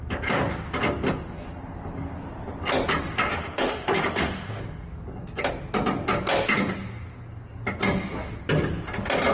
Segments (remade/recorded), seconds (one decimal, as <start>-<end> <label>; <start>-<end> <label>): 0.0-3.3 recorded; 3.3-4.6 remade; 4.6-9.3 recorded

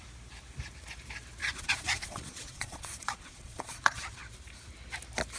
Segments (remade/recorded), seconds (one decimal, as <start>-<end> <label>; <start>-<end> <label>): 0.0-1.4 recorded; 1.4-4.3 remade; 4.3-5.4 recorded

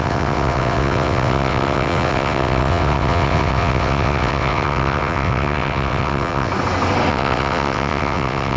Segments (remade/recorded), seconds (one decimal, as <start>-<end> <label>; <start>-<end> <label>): 0.0-6.5 remade; 6.5-7.1 recorded; 7.1-8.6 remade

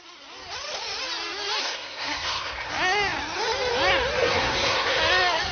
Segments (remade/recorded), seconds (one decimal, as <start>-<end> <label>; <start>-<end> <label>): 0.0-1.6 recorded; 1.6-2.7 remade; 2.7-4.2 recorded; 4.2-5.0 remade; 5.0-5.5 recorded